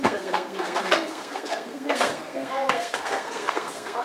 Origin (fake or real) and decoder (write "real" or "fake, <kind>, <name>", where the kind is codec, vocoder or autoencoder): fake, codec, SNAC